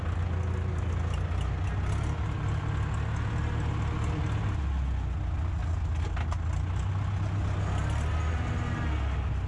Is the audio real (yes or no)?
yes